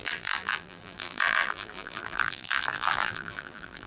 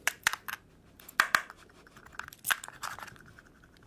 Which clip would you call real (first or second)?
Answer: second